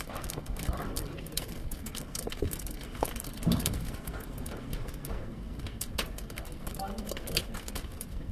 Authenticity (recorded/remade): remade